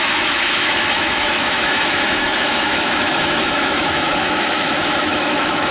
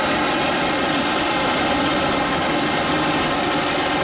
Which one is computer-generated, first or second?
first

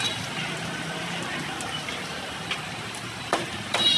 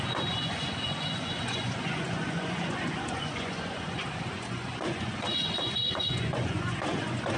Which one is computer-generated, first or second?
second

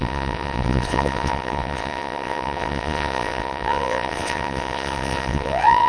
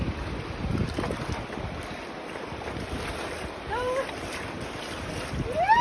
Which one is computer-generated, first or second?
first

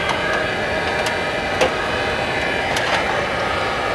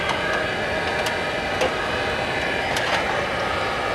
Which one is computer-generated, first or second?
second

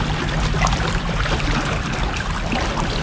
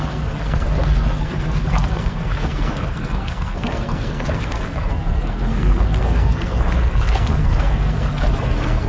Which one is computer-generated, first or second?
second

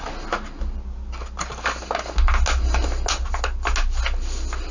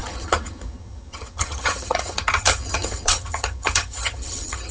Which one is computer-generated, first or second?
second